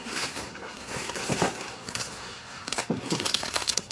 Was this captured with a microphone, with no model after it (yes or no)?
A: no